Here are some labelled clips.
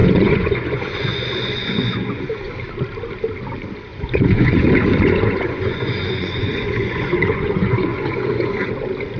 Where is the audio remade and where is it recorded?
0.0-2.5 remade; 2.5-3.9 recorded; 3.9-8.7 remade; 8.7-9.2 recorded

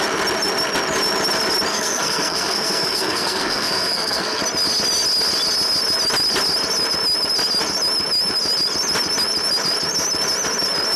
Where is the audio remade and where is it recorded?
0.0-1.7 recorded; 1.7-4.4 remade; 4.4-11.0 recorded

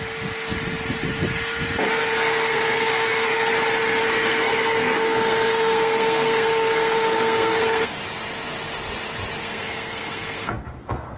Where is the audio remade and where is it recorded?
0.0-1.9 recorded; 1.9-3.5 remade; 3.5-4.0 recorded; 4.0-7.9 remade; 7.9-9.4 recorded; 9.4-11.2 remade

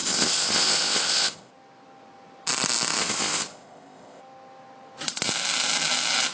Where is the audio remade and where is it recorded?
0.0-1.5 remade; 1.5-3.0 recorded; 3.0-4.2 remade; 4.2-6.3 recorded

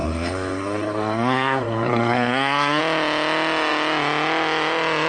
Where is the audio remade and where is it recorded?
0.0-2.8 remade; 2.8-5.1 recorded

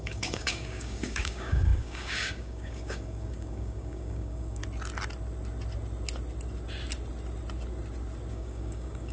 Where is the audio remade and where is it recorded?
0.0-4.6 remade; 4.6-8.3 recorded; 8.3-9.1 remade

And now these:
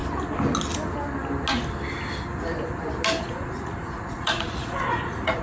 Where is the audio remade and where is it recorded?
0.0-3.2 recorded; 3.2-5.4 remade